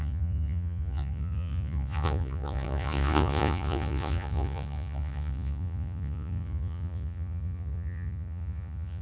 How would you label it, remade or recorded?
remade